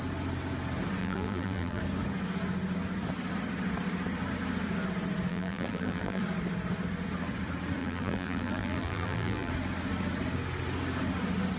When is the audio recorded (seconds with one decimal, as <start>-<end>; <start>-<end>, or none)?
0.0-1.0; 1.8-5.3; 6.2-7.8; 9.5-11.6